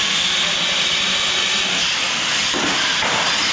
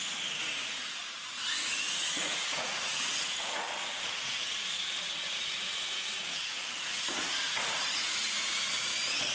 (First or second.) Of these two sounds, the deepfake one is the second